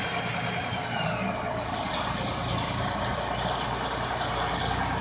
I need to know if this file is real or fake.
real